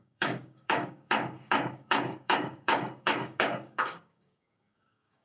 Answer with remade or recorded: remade